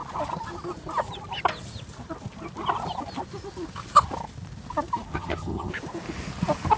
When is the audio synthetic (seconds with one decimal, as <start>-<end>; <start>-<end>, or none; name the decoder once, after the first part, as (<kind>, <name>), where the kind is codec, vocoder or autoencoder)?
5.1-5.7 (vocoder, HiFi-GAN)